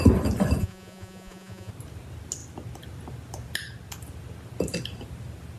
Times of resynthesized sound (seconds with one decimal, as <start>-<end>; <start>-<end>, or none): 0.6-1.7

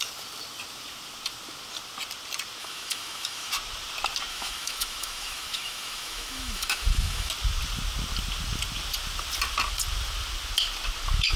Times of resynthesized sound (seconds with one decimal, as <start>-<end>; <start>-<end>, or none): 2.6-3.5; 4.3-7.3

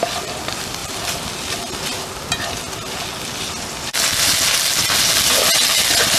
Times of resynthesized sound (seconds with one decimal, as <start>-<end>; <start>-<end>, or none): none

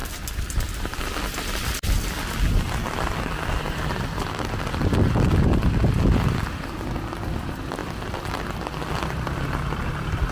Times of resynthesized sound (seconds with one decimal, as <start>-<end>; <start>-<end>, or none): 0.0-1.0; 7.8-9.9

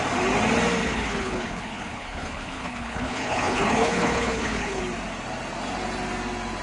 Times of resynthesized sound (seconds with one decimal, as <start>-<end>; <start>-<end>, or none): 0.8-4.8

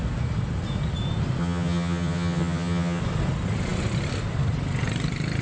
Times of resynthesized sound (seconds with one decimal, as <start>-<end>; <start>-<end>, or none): 1.4-3.0